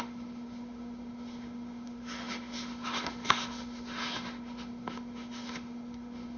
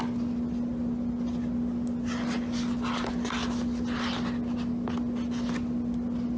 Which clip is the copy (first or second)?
first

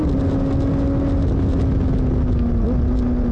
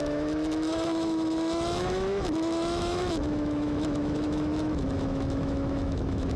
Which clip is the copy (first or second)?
second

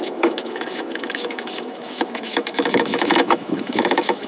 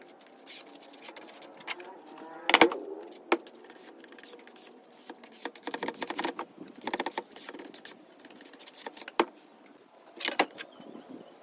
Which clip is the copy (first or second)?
first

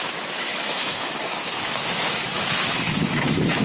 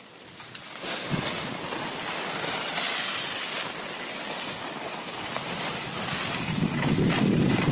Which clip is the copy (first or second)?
first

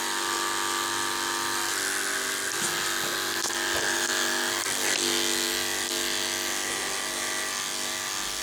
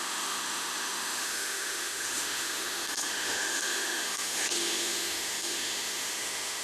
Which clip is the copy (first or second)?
second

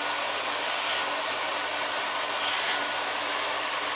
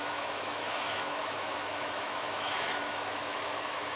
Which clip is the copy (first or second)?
second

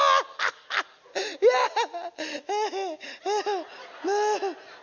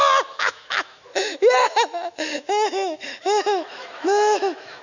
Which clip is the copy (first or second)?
second